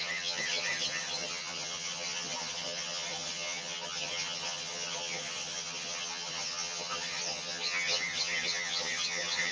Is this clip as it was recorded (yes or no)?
no